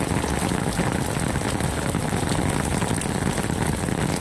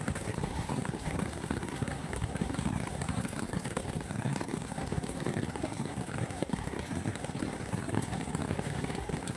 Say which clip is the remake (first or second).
second